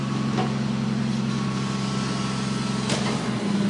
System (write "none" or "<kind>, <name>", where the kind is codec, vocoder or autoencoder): none